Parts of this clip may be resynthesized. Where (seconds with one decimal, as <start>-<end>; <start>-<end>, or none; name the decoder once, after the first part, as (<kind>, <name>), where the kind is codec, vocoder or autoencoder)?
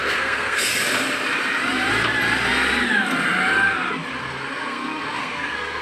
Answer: 0.0-0.7 (codec, SNAC); 4.2-5.8